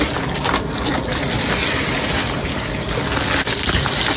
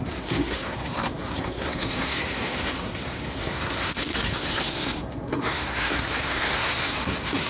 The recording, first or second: first